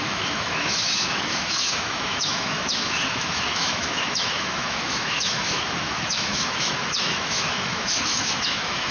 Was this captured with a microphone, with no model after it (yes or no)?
no